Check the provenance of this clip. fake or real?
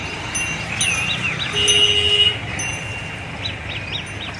real